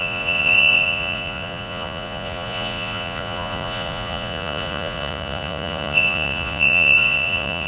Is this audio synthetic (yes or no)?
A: yes